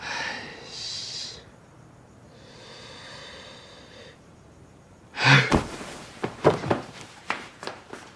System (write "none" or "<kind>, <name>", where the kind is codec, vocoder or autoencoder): vocoder, BigVGAN v2